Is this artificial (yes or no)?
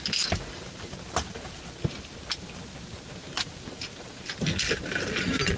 no